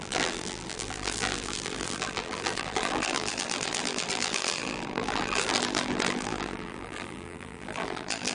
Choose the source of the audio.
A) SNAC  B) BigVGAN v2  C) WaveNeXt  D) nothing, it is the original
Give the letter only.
B